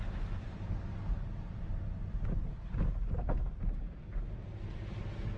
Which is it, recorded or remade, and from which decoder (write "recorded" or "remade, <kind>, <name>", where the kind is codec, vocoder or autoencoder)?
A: recorded